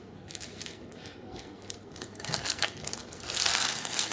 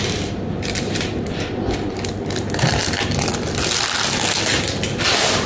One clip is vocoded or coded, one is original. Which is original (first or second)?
second